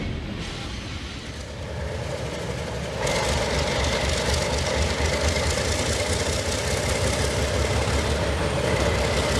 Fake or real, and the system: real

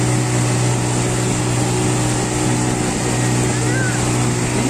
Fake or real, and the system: real